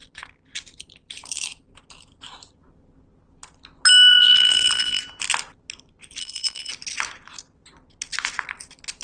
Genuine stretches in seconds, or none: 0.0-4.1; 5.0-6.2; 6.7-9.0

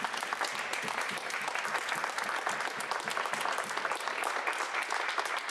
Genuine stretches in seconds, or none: 0.0-0.7; 4.0-5.5

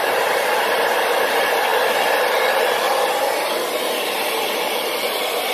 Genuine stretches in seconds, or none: 1.7-3.8

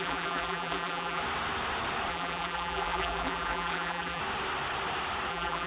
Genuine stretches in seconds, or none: 1.2-2.1; 4.2-5.3

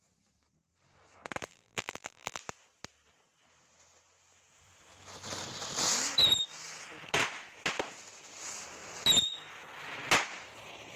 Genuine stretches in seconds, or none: 0.0-1.5; 2.4-11.0

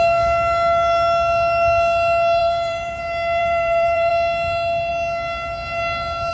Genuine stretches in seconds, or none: 0.0-2.4; 3.0-3.4; 4.1-6.3